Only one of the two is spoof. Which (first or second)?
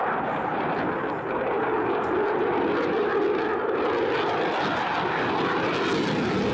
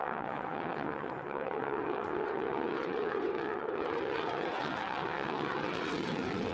second